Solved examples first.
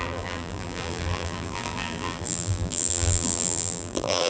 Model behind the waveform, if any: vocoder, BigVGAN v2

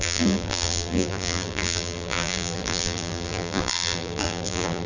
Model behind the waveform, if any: vocoder, BigVGAN v2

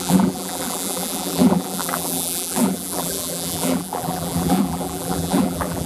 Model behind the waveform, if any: vocoder, BigVGAN v2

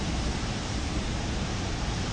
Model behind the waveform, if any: vocoder, BigVGAN v2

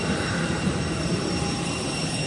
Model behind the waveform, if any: vocoder, BigVGAN v2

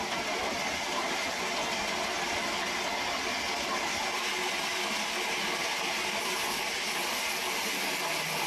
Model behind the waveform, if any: none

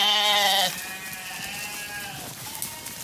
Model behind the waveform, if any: none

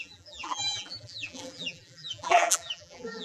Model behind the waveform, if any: vocoder, BigVGAN v2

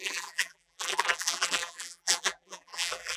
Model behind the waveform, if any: vocoder, BigVGAN v2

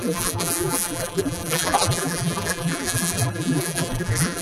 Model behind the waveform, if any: vocoder, BigVGAN v2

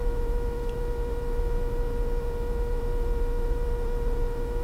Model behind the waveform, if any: none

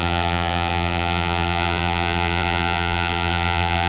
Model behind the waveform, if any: vocoder, BigVGAN v2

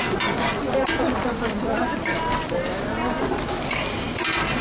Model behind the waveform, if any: vocoder, BigVGAN v2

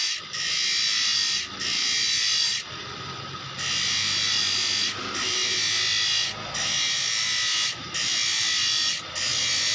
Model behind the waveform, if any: none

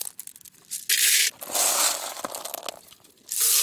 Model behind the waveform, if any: none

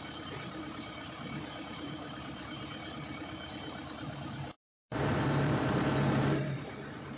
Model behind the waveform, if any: vocoder, BigVGAN v2